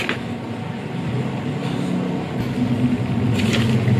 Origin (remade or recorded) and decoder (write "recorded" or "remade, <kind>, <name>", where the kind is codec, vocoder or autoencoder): recorded